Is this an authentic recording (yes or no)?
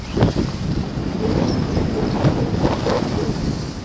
yes